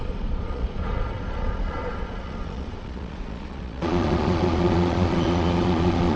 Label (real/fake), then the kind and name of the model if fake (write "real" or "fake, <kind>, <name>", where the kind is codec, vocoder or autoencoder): fake, vocoder, Vocos